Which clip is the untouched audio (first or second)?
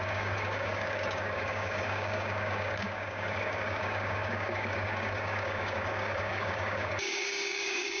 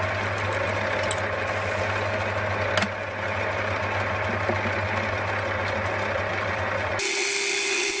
second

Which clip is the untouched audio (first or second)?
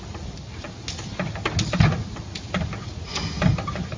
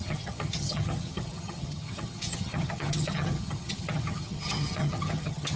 first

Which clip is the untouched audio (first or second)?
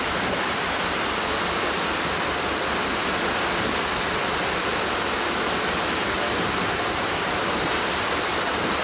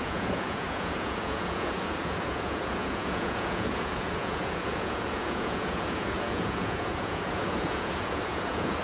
first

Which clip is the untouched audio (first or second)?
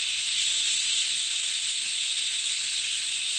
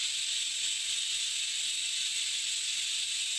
second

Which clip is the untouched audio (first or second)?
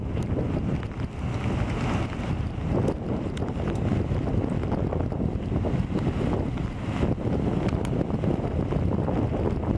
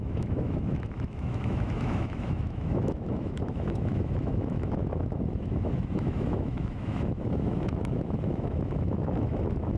first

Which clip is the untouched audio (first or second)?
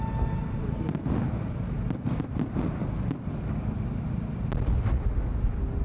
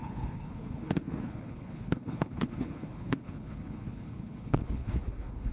first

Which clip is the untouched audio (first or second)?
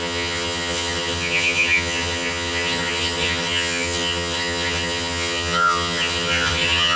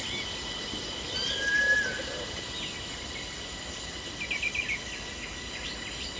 second